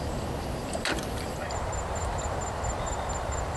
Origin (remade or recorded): remade